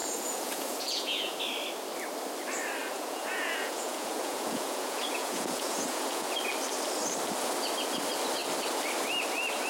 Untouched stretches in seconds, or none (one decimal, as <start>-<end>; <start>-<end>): 1.4-2.8; 6.3-9.7